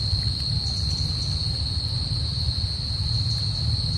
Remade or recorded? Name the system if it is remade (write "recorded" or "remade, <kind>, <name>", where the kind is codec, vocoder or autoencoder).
recorded